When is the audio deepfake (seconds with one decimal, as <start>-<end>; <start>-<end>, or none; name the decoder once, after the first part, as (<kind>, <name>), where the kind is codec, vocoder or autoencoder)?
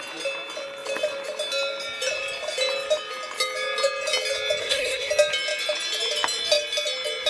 4.6-5.1 (codec, SNAC)